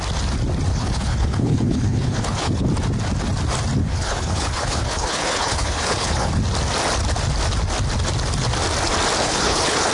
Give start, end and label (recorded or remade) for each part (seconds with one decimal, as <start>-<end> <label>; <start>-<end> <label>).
0.0-0.7 recorded; 0.7-2.5 remade; 2.5-3.8 recorded; 3.8-6.3 remade; 6.3-9.2 recorded; 9.2-9.9 remade